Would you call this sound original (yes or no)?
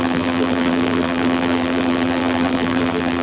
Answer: no